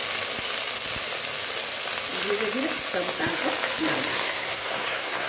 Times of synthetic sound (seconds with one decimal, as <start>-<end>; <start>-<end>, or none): 4.1-5.3